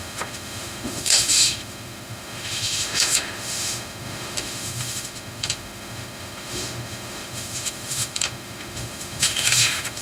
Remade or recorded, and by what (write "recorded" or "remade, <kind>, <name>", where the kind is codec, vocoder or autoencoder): remade, autoencoder, DAC-VAE